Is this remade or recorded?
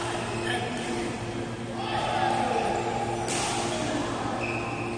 recorded